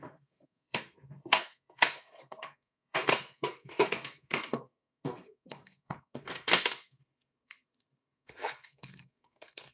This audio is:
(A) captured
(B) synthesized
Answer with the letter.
B